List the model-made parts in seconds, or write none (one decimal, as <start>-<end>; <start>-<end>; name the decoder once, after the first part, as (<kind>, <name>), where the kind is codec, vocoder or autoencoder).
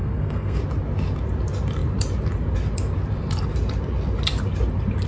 0.0-0.6 (codec, SNAC)